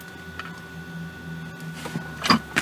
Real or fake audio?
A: real